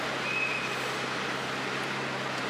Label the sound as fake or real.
real